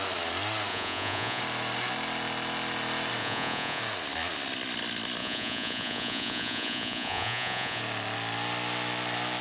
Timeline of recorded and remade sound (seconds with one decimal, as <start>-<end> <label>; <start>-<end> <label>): 0.0-0.7 recorded; 0.7-1.4 remade; 1.4-3.2 recorded; 3.2-3.8 remade; 3.8-5.2 recorded; 5.2-7.8 remade; 7.8-9.4 recorded